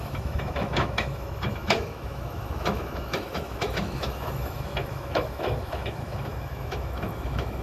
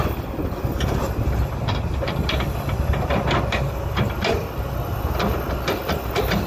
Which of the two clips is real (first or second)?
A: second